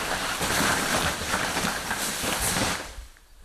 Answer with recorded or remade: remade